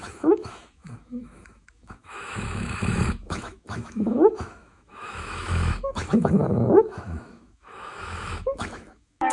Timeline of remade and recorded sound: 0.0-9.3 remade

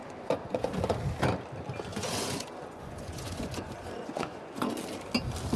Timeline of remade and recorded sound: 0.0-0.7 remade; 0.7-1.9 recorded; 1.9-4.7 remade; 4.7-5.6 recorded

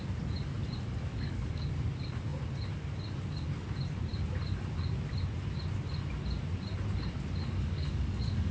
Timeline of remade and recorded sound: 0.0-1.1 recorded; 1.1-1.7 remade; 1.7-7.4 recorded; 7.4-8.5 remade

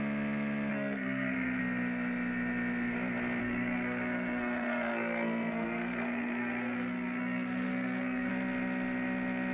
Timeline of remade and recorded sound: 0.0-0.7 recorded; 0.7-1.6 remade; 1.6-3.4 recorded; 3.4-8.3 remade; 8.3-9.5 recorded

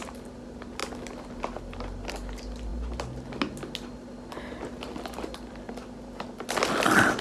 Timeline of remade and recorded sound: 0.0-7.2 recorded